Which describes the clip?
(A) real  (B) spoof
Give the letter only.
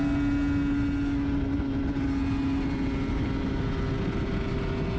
A